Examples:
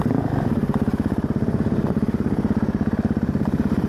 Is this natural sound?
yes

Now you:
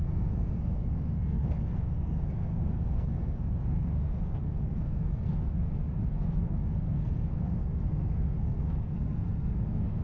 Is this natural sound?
no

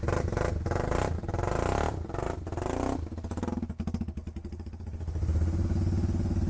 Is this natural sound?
yes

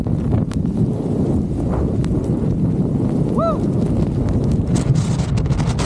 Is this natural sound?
yes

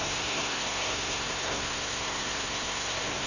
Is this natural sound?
no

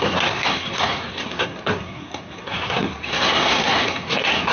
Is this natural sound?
no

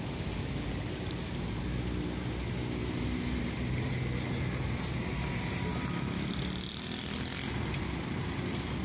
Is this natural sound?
yes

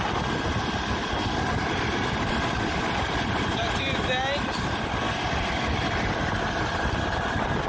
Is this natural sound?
yes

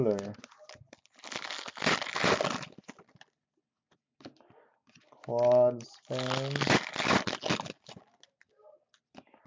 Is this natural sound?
yes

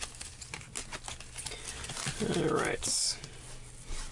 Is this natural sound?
yes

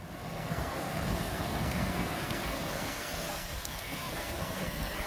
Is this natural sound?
no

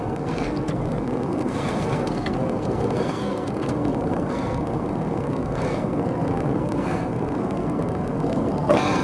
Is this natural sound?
no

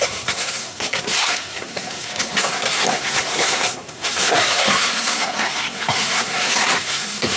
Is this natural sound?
no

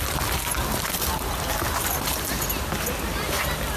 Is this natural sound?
yes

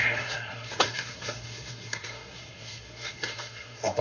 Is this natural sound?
no